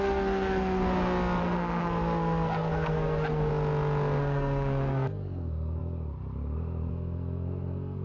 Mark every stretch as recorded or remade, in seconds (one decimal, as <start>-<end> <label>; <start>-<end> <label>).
0.0-0.8 remade; 0.8-1.4 recorded; 1.4-3.5 remade; 3.5-4.2 recorded; 4.2-5.8 remade; 5.8-6.9 recorded; 6.9-8.0 remade